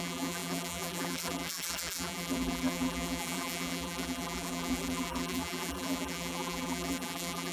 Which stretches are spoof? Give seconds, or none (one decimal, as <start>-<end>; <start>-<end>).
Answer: 0.0-7.5